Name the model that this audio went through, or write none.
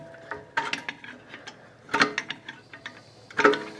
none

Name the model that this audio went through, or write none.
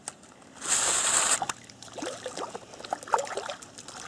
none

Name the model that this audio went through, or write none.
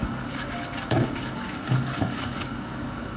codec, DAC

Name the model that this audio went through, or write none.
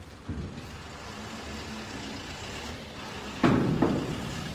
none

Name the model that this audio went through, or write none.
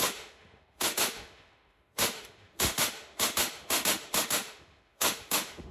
autoencoder, DAC-VAE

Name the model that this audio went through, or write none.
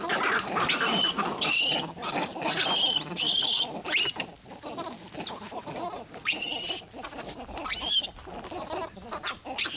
none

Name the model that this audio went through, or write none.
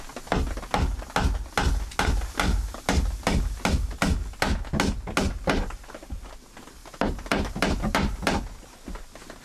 none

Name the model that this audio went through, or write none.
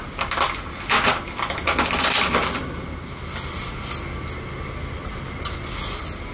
none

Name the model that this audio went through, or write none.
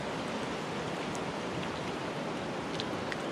none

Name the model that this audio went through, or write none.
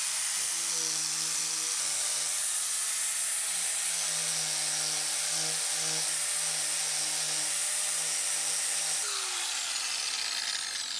none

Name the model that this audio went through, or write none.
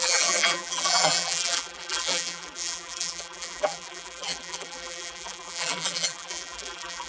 vocoder, BigVGAN v2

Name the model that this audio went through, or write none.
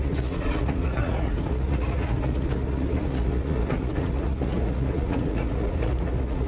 vocoder, Vocos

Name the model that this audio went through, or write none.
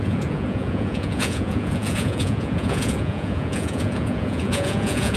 vocoder, Vocos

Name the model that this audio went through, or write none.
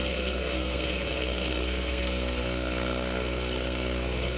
codec, SNAC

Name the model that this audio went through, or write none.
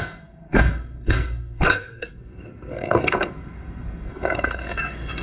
codec, SNAC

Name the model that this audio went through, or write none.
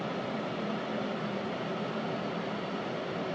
vocoder, BigVGAN v2